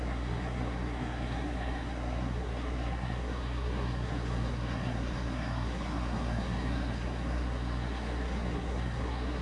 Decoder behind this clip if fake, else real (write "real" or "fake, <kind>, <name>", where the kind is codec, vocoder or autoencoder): fake, codec, SNAC